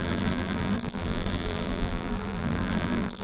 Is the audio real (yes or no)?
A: no